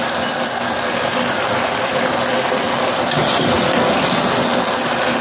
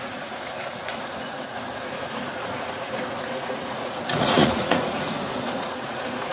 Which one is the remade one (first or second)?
second